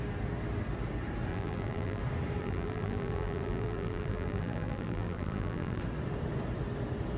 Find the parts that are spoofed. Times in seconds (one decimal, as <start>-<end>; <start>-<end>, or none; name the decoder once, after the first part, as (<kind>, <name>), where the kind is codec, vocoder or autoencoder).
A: 1.3-2.0 (vocoder, BigVGAN v2); 2.4-5.8